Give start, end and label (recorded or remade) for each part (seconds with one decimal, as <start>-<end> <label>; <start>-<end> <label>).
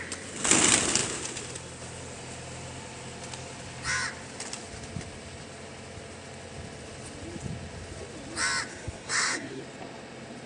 0.0-8.7 recorded; 8.7-9.6 remade; 9.6-10.5 recorded